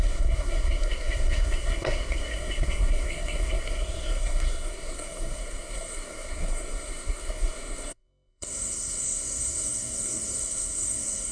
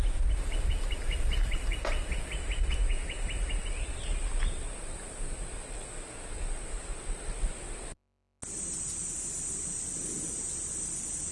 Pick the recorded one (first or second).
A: second